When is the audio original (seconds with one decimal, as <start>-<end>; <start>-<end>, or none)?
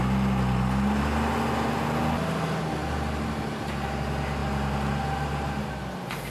0.0-6.3